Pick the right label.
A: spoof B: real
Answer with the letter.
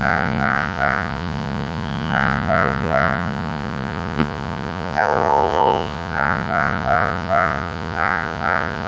A